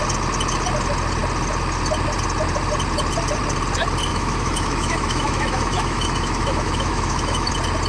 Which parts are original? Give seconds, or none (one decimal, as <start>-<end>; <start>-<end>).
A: 0.0-4.1; 7.5-7.9